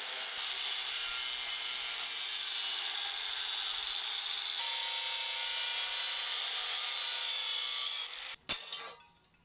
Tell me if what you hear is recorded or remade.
recorded